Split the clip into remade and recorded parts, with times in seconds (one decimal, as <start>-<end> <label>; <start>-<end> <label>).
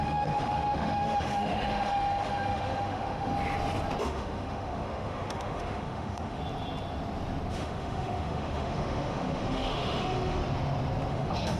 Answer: 0.0-3.3 remade; 3.3-4.0 recorded; 4.0-6.4 remade; 6.4-7.5 recorded; 7.5-10.4 remade; 10.4-11.1 recorded; 11.1-11.6 remade